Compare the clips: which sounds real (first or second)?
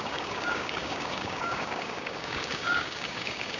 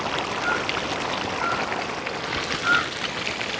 second